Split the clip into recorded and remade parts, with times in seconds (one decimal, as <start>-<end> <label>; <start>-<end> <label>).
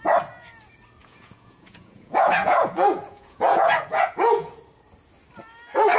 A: 0.0-1.0 recorded; 1.0-4.6 remade; 4.6-6.0 recorded